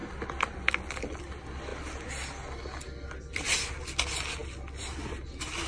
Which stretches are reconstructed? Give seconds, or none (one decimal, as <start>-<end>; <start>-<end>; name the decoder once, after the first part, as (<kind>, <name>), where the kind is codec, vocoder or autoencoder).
none